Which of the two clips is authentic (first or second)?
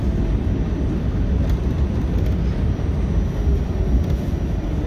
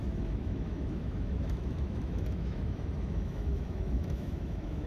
first